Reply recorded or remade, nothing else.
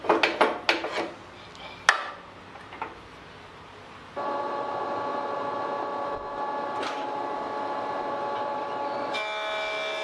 recorded